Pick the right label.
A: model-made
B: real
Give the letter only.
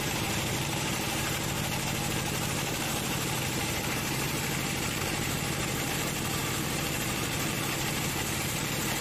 A